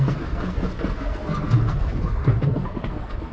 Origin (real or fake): fake